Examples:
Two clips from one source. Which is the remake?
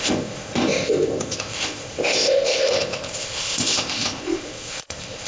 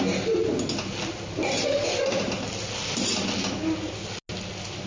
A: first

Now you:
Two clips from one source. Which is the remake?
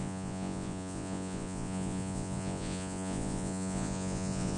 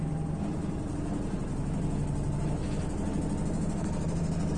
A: first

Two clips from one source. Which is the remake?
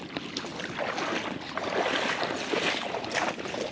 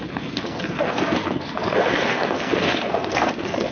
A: second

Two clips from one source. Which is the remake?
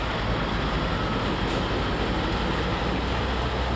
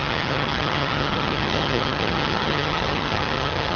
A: second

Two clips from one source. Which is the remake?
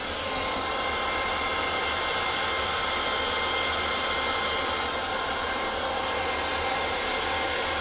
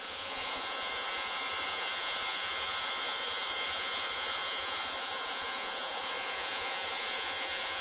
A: second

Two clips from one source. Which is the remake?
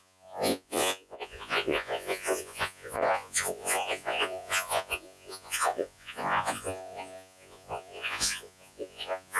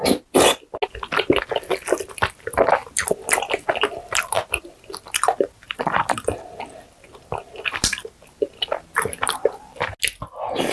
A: first